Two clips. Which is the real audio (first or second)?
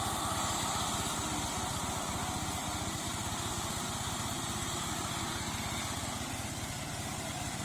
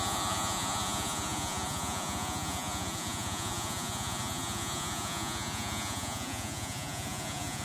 first